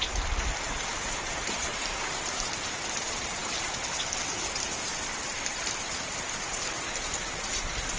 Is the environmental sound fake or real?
fake